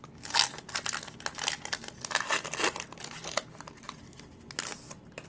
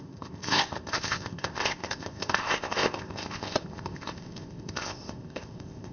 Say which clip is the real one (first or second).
first